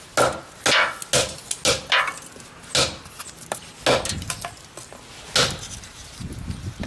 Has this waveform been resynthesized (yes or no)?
no